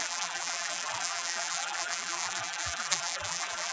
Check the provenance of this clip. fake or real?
fake